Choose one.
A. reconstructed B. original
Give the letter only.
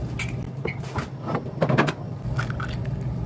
B